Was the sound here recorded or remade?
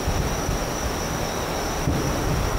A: recorded